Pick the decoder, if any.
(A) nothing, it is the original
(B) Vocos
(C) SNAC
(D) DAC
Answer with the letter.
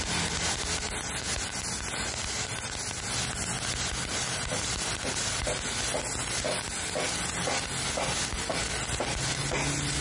A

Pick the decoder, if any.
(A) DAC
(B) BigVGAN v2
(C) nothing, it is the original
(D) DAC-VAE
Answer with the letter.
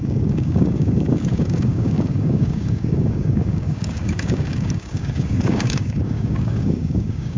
A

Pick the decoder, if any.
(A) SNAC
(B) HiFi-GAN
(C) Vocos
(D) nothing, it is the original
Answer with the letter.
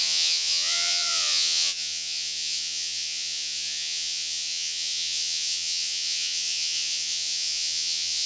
C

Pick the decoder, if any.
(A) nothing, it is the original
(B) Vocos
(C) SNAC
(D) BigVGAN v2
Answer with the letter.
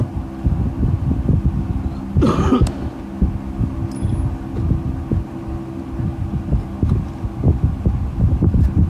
A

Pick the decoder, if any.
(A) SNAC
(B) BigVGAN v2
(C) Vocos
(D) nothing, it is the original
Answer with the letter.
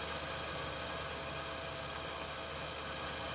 D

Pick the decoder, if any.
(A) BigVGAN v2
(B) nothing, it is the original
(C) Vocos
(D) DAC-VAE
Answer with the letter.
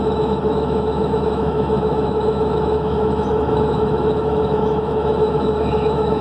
D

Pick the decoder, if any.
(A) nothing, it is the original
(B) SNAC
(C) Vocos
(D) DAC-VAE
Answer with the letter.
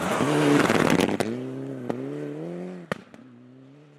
A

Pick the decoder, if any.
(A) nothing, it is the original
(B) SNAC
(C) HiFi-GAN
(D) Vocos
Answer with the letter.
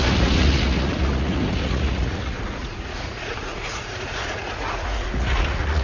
D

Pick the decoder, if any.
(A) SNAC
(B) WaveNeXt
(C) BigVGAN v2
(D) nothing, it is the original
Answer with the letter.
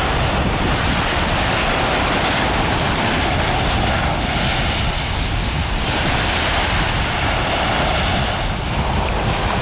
D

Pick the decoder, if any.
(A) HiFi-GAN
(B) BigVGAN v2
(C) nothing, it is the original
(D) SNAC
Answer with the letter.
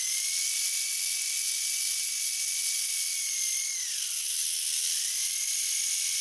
C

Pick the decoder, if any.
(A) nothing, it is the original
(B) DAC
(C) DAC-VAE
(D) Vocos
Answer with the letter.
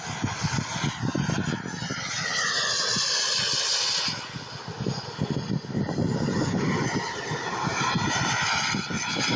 A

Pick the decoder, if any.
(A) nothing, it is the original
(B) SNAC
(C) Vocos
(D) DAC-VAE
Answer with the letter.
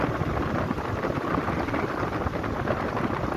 A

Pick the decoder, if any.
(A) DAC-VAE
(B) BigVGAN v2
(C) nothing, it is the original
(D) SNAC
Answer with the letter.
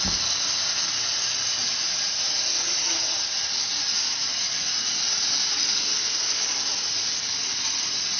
C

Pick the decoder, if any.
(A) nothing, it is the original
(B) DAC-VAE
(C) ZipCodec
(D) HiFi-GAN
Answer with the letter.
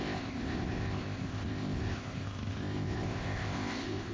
C